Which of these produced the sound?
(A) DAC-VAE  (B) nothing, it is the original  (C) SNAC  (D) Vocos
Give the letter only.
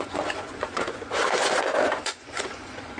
D